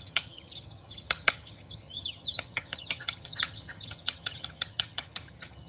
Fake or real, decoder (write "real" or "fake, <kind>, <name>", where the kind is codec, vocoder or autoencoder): fake, vocoder, HiFi-GAN